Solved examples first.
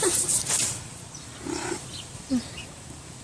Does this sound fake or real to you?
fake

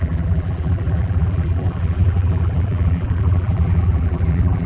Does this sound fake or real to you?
fake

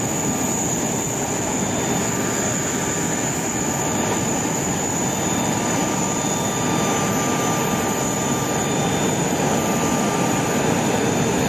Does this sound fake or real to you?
real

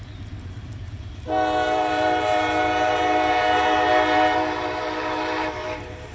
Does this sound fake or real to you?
fake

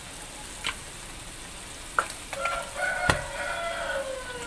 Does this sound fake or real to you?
real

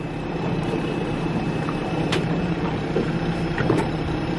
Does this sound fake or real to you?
fake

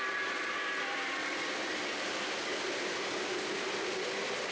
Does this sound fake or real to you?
fake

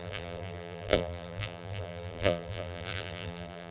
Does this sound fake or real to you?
fake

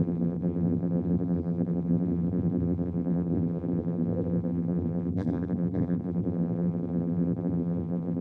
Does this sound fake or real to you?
fake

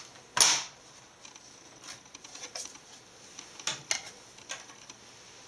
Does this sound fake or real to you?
real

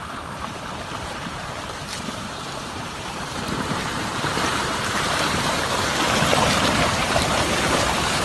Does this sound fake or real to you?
fake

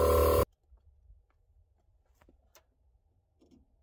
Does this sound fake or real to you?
real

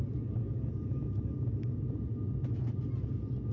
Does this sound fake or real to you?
real